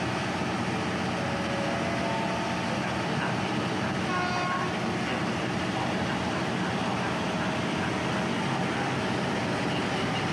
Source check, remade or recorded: recorded